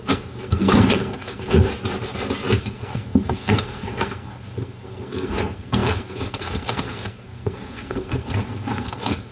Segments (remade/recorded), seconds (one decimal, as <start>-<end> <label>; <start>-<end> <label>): 0.0-1.7 remade; 1.7-2.6 recorded; 2.6-9.3 remade